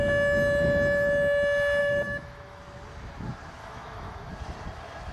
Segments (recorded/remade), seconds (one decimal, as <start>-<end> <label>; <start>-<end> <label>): 0.0-1.8 recorded; 1.8-2.6 remade; 2.6-3.6 recorded; 3.6-4.3 remade; 4.3-5.1 recorded